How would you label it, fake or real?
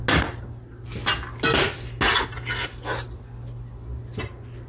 real